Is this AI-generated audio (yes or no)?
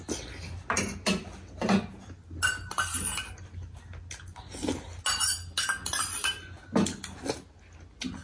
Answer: no